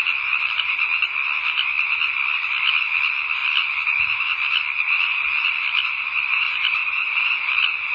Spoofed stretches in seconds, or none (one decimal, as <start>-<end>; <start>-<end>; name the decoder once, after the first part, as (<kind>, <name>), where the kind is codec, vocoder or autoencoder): 6.3-7.5 (vocoder, BigVGAN v2)